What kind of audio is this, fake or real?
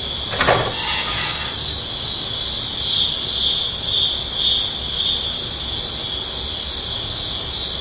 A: real